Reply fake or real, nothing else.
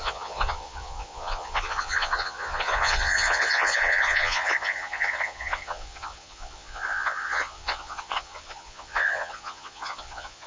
fake